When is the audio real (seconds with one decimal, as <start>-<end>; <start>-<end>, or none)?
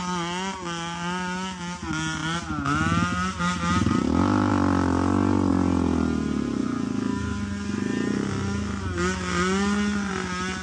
0.0-10.6